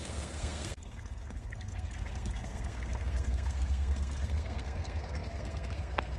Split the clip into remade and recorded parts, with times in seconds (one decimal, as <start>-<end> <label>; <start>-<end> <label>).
0.0-6.2 remade

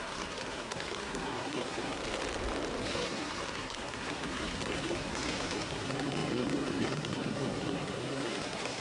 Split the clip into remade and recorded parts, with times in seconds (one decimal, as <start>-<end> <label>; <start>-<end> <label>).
0.0-2.0 remade; 2.0-2.8 recorded; 2.8-8.8 remade